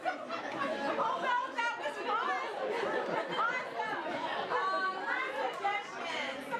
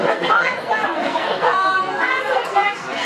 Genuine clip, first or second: first